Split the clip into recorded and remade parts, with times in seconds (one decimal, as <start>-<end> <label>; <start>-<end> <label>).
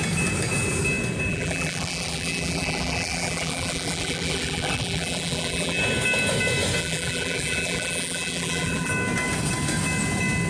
0.0-1.3 recorded; 1.3-5.8 remade; 5.8-6.8 recorded; 6.8-8.9 remade; 8.9-10.5 recorded